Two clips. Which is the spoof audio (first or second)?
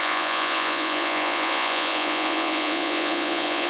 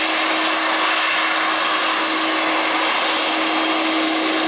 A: first